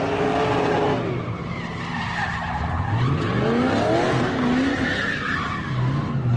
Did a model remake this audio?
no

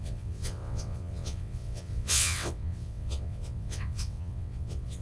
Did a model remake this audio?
yes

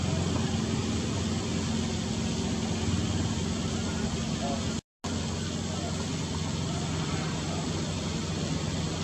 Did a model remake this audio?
no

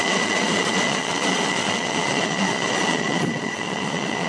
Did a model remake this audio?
yes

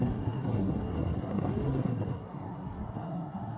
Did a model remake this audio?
yes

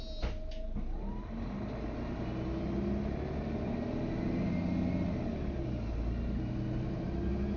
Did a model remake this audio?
no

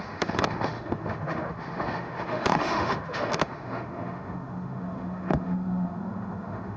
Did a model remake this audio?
yes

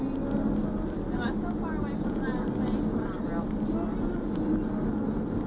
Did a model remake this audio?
no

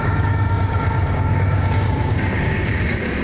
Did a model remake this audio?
yes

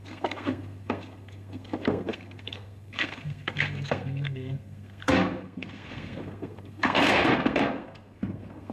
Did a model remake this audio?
yes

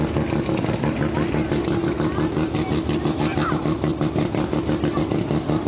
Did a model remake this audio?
no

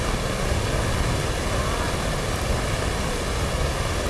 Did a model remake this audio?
no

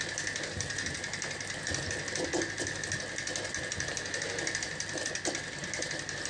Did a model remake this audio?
no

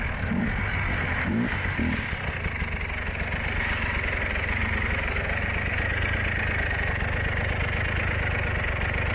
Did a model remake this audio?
no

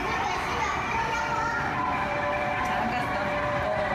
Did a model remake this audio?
yes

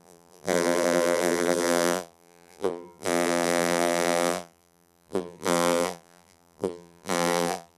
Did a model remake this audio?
yes